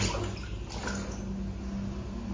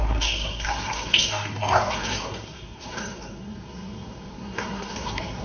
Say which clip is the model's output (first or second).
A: second